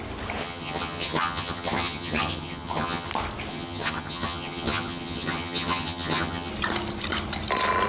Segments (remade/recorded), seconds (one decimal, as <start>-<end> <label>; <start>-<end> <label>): 0.0-0.4 recorded; 0.4-3.1 remade; 3.1-3.5 recorded; 3.5-6.5 remade; 6.5-7.9 recorded